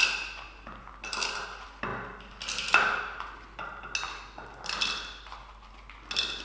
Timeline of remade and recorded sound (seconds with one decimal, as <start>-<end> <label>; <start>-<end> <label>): 0.0-6.4 recorded